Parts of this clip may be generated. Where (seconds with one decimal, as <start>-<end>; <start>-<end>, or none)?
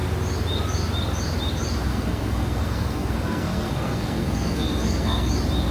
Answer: 1.9-5.3